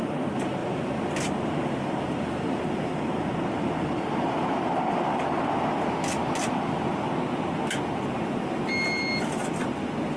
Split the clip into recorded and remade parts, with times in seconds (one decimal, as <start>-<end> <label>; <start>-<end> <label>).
0.0-10.2 recorded